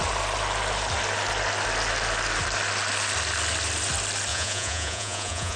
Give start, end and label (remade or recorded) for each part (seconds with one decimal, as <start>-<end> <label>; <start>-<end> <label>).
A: 0.0-4.3 recorded; 4.3-5.6 remade